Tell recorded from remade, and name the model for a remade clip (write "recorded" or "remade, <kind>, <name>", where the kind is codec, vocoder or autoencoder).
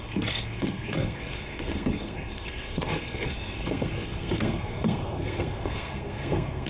remade, codec, SNAC